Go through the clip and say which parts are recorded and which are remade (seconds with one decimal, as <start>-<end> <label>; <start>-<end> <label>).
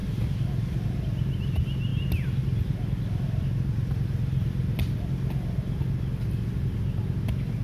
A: 0.0-7.6 recorded